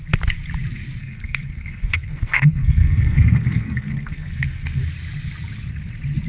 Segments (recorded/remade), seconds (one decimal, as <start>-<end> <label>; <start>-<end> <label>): 0.0-1.0 recorded; 1.0-4.8 remade; 4.8-6.3 recorded